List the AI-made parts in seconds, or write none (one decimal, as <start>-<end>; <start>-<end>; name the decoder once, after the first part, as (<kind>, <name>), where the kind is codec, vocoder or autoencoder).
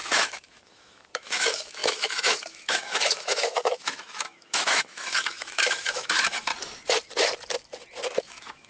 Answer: 0.0-6.5 (autoencoder, DAC-VAE); 8.2-8.7